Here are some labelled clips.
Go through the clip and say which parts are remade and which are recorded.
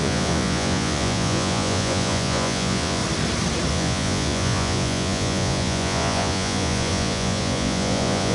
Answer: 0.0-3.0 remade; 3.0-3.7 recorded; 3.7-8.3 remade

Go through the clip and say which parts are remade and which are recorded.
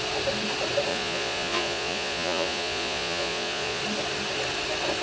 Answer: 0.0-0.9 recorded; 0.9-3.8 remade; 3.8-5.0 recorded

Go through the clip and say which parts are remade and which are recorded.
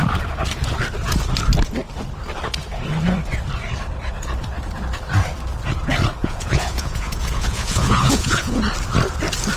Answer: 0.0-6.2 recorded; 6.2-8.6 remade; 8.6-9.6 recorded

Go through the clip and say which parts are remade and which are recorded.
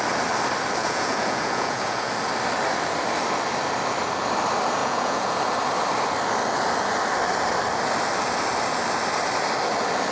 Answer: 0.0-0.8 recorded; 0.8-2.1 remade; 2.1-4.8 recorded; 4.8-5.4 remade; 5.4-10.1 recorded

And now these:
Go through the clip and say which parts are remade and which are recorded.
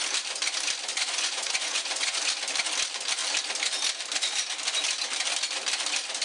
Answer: 0.0-0.9 recorded; 0.9-2.2 remade; 2.2-6.2 recorded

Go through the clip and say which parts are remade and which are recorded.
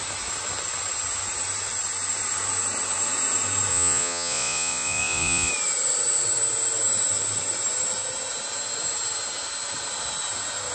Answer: 0.0-3.7 recorded; 3.7-5.5 remade; 5.5-10.7 recorded